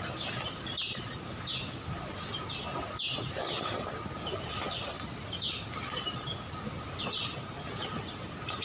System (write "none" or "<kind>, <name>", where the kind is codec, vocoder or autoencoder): none